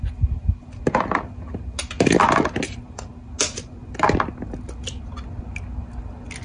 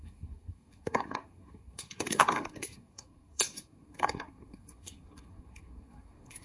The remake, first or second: second